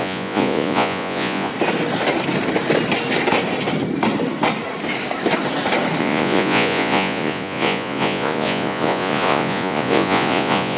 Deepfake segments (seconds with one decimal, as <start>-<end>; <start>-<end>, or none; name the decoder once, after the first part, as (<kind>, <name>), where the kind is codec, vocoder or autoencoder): 0.0-1.5 (vocoder, Vocos); 6.0-10.8